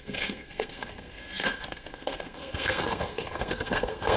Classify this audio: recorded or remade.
remade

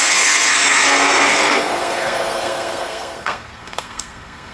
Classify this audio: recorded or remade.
remade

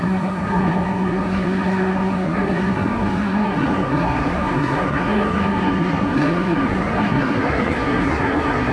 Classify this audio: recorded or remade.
remade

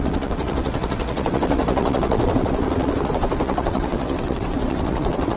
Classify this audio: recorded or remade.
remade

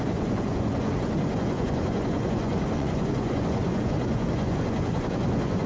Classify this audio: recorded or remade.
remade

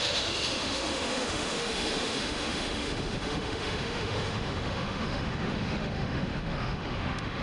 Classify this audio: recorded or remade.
remade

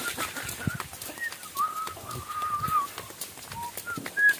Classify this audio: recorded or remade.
recorded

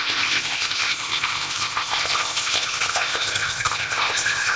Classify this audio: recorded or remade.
remade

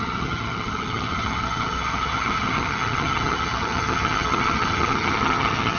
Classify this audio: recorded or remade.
remade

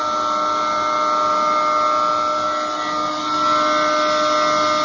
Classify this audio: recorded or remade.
recorded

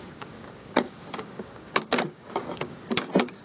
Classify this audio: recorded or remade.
remade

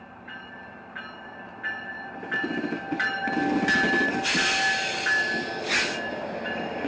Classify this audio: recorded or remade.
recorded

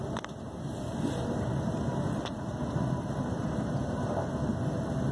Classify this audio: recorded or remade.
recorded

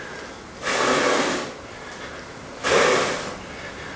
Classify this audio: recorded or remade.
recorded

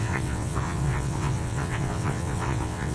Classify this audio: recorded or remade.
remade